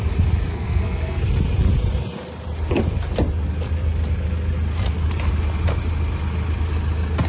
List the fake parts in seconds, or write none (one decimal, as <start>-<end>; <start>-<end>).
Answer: 0.5-1.2